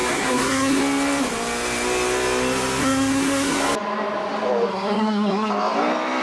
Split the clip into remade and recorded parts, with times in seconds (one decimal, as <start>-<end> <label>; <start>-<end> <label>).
0.0-0.8 remade; 0.8-2.8 recorded; 2.8-3.6 remade; 3.6-4.7 recorded; 4.7-5.5 remade; 5.5-6.2 recorded